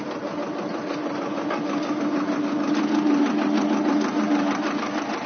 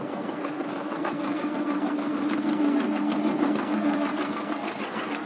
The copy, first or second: second